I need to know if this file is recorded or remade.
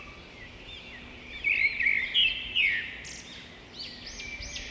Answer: recorded